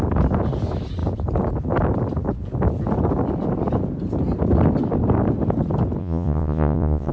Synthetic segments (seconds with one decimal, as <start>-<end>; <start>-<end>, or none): 6.0-7.1